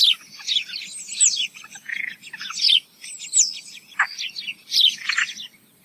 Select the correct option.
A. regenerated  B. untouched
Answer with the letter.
B